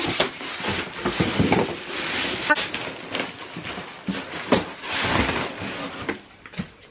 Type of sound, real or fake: real